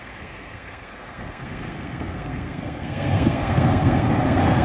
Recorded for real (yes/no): no